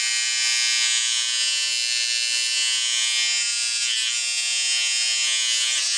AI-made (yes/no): no